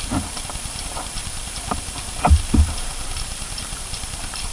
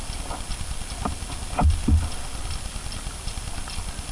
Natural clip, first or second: second